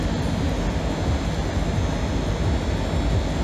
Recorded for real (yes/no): yes